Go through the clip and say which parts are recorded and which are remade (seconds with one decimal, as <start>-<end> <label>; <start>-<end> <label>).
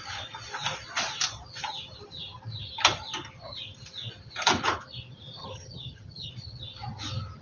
0.0-5.4 recorded; 5.4-6.3 remade; 6.3-7.4 recorded